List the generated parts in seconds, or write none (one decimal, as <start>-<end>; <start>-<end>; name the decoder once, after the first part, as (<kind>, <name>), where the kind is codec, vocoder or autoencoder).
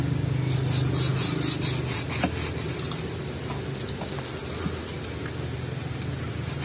none